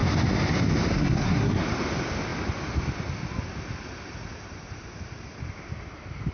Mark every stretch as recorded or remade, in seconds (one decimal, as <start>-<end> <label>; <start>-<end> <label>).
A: 0.0-0.9 recorded; 0.9-1.6 remade; 1.6-6.3 recorded